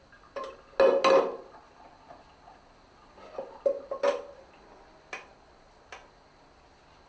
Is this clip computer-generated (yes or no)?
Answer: no